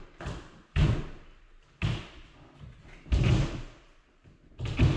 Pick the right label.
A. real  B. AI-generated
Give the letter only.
A